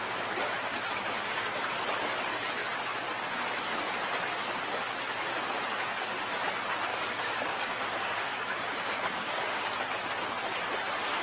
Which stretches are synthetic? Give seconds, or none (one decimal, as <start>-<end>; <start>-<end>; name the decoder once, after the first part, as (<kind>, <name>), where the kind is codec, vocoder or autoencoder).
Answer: 6.9-9.7 (codec, DAC)